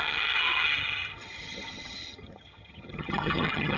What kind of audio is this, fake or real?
fake